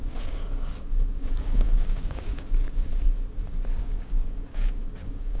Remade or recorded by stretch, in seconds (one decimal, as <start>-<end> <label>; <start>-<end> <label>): 0.0-2.9 remade; 2.9-3.8 recorded; 3.8-5.4 remade